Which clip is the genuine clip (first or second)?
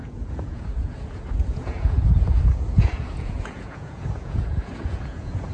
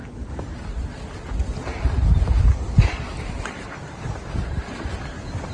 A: second